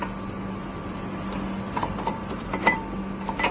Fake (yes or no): no